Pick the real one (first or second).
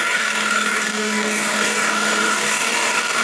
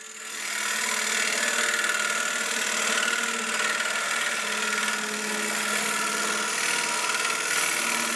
second